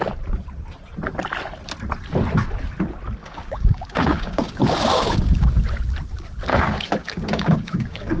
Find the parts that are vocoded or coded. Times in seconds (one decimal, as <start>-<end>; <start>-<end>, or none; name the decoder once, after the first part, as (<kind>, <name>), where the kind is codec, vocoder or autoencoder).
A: 3.2-5.5 (codec, DAC); 6.5-8.2